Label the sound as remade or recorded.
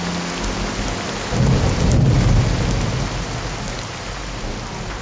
recorded